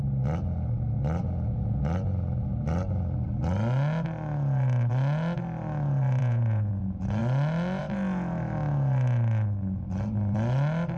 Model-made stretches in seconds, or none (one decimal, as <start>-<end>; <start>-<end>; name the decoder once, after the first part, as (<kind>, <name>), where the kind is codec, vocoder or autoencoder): 1.2-1.8 (vocoder, Vocos); 6.2-6.8